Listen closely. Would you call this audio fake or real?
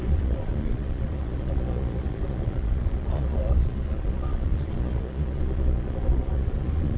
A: fake